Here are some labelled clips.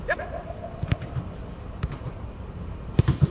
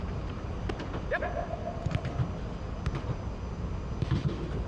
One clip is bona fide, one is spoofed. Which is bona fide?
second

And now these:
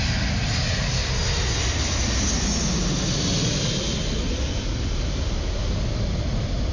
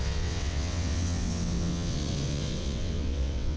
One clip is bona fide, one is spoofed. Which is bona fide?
first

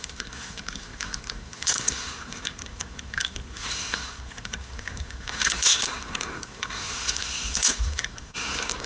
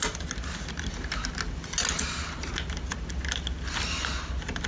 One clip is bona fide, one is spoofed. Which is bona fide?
second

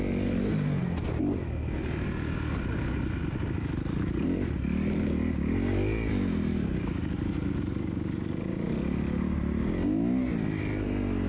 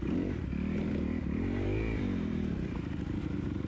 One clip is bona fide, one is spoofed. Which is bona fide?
first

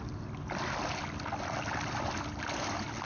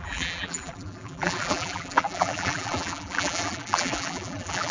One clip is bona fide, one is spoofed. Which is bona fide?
first